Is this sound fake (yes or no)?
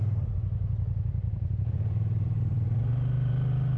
yes